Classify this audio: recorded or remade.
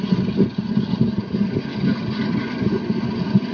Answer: recorded